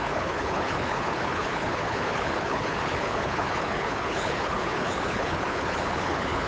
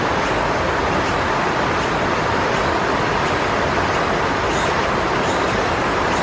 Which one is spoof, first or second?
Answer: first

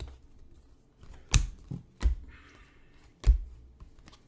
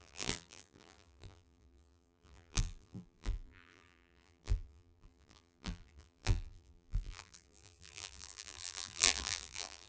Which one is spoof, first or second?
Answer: second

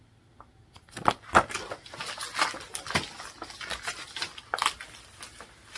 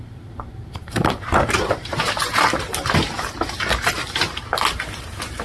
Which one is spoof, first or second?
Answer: second